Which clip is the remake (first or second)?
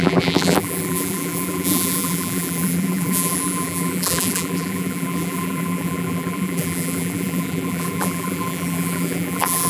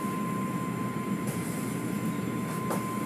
first